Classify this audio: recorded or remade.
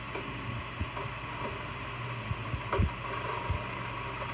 recorded